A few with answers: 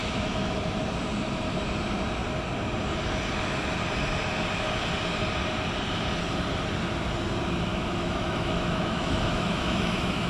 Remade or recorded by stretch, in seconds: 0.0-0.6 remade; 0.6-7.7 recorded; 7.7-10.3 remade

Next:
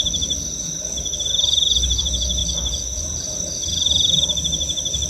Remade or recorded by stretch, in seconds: 0.0-2.4 remade; 2.4-3.0 recorded; 3.0-5.1 remade

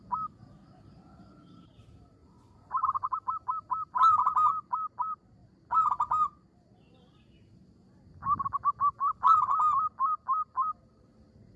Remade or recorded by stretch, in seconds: 0.0-2.2 recorded; 2.2-3.1 remade; 3.1-11.6 recorded

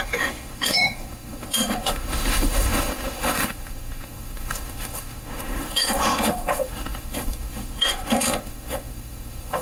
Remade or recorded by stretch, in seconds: 0.0-9.6 remade

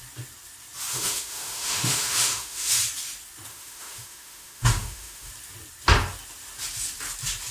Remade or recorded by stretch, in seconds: 0.0-0.9 recorded; 0.9-2.8 remade; 2.8-3.5 recorded; 3.5-5.3 remade; 5.3-7.5 recorded

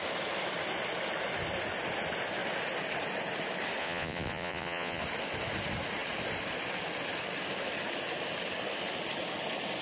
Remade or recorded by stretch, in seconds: 0.0-3.8 recorded; 3.8-5.0 remade; 5.0-9.8 recorded

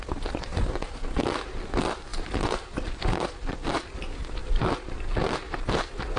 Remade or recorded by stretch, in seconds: 0.0-6.2 recorded